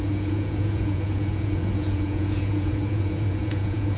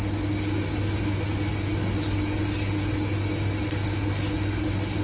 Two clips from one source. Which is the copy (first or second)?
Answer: first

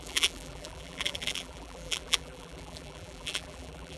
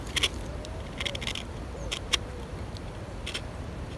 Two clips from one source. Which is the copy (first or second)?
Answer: first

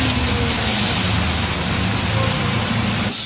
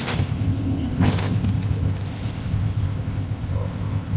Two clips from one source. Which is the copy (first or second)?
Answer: second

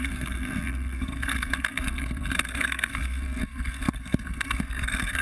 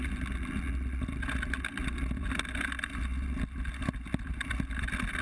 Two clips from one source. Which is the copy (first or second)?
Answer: first